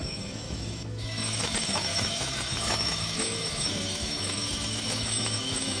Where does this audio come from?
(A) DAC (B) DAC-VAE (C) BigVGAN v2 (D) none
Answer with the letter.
B